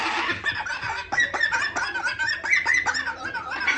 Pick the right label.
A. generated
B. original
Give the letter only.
B